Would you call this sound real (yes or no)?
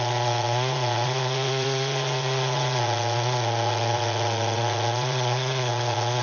no